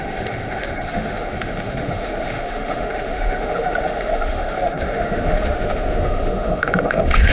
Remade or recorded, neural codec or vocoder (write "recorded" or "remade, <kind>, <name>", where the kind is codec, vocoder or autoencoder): remade, autoencoder, DAC-VAE